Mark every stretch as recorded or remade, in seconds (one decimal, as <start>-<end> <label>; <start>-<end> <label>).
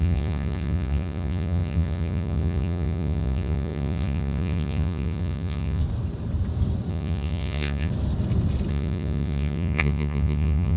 0.0-5.8 remade; 5.8-6.9 recorded; 6.9-7.9 remade; 7.9-8.7 recorded; 8.7-10.8 remade